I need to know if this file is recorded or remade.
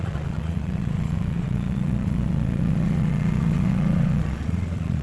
remade